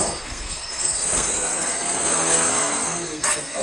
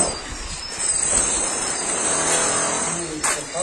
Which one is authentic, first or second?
second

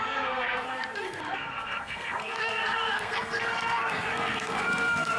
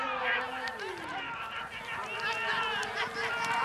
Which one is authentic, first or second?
second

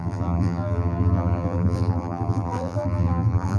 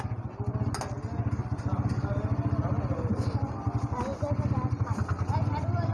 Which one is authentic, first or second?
second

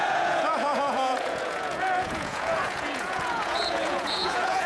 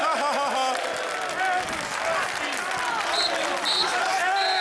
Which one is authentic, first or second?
second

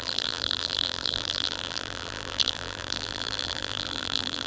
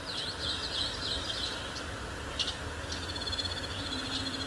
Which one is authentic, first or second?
second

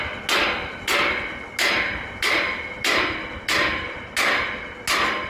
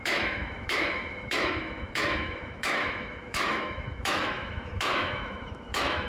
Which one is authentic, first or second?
first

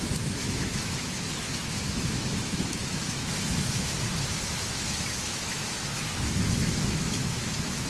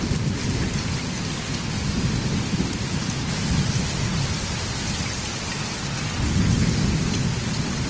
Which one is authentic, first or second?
second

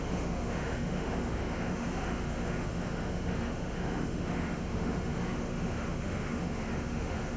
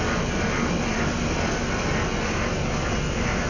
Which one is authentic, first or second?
second